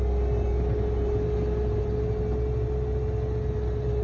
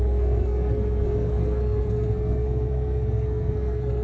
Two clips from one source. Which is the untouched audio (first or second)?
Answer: first